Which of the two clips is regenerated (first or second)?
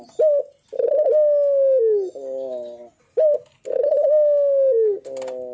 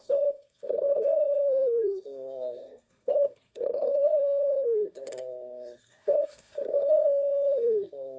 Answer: second